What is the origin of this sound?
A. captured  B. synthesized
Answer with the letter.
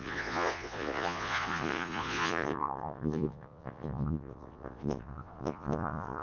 B